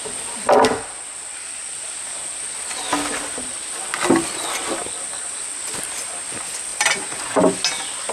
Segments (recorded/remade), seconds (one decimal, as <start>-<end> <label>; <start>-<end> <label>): 0.0-6.7 recorded; 6.7-7.5 remade; 7.5-8.1 recorded